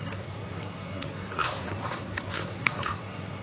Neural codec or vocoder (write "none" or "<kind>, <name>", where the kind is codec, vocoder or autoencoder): codec, SNAC